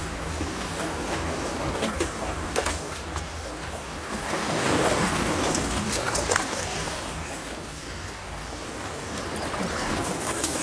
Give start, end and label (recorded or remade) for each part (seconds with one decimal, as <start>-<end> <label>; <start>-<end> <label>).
0.0-9.2 remade; 9.2-9.7 recorded; 9.7-10.6 remade